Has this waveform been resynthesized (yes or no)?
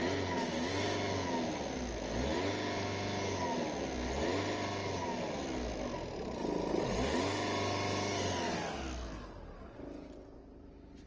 no